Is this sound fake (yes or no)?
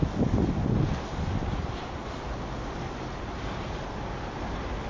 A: no